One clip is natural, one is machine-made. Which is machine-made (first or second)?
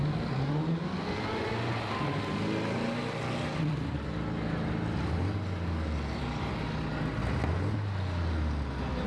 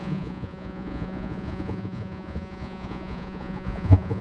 second